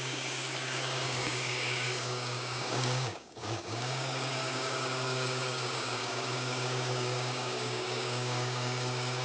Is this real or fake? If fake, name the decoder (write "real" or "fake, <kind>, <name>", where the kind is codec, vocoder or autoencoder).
fake, codec, DAC